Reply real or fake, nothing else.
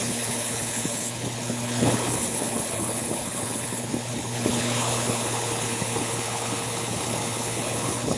fake